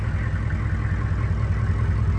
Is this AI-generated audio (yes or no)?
no